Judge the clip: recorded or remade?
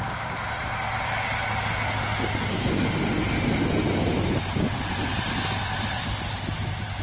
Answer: recorded